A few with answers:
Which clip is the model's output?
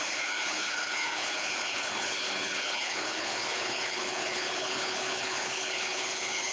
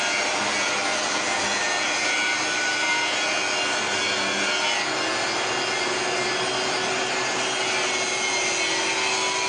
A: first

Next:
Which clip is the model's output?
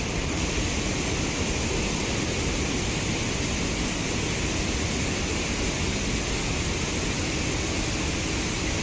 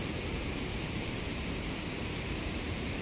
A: second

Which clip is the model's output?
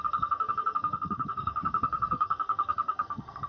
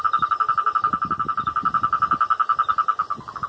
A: first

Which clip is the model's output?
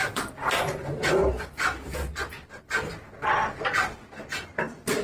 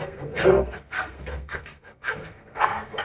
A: second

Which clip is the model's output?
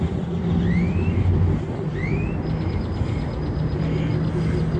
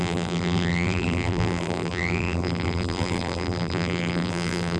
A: second